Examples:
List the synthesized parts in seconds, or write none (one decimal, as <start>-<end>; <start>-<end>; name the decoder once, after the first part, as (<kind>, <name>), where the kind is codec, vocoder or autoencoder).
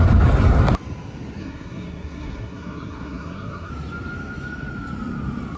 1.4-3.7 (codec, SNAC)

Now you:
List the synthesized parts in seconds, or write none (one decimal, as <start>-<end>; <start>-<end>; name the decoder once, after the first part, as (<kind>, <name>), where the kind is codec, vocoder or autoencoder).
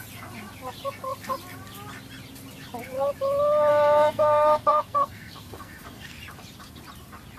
3.7-6.2 (codec, SNAC)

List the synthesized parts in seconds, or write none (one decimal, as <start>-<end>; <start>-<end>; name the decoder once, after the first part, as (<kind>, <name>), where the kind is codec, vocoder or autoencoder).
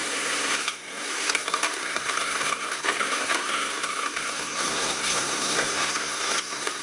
0.0-6.8 (codec, SNAC)